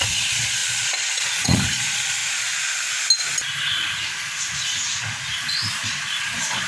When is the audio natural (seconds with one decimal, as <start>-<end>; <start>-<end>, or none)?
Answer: 2.2-6.2